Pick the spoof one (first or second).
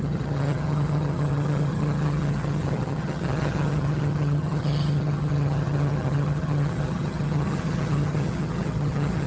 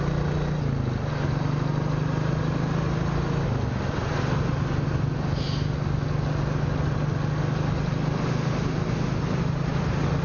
first